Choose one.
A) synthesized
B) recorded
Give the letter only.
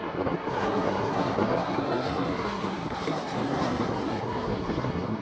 A